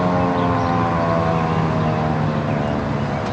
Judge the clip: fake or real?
real